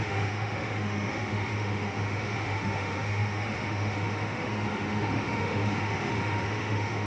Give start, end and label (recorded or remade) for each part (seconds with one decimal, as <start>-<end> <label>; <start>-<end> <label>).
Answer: 0.0-7.1 remade